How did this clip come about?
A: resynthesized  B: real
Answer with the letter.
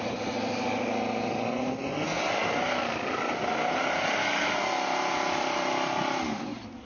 B